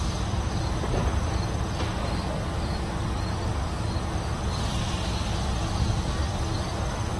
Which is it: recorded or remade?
recorded